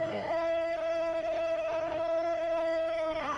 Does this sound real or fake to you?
fake